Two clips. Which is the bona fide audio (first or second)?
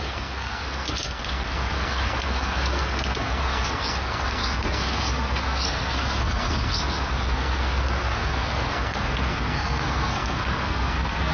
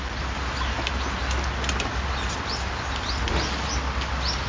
second